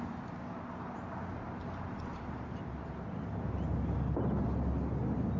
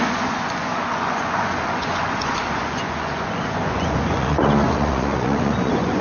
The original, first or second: first